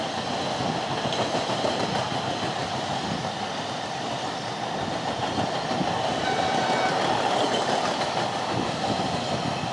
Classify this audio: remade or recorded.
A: recorded